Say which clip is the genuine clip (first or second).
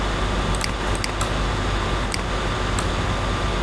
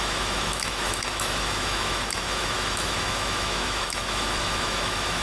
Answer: first